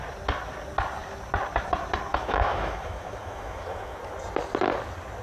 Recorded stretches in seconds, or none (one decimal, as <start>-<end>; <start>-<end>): 0.0-2.1; 4.0-5.2